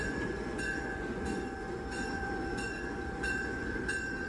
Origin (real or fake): fake